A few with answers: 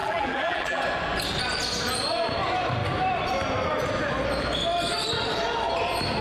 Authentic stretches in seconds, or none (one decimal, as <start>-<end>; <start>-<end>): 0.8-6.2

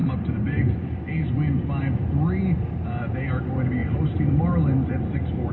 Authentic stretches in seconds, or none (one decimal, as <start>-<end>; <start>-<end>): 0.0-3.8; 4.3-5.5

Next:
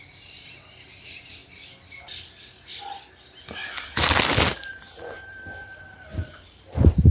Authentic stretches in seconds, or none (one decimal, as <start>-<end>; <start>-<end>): 1.4-4.4